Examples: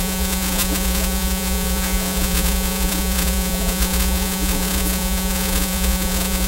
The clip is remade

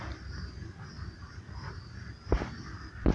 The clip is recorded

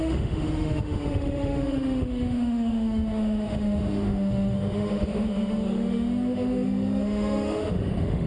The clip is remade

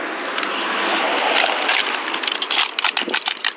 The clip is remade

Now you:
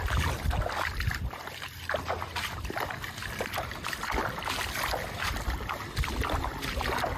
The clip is recorded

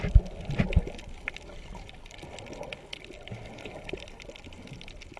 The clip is recorded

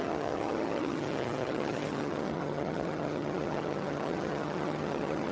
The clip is remade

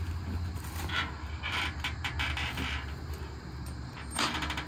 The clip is recorded